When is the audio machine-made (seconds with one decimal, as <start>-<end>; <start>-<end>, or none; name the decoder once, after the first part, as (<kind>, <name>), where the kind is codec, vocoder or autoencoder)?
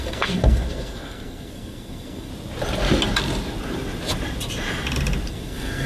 0.0-2.3 (codec, SNAC); 5.3-5.9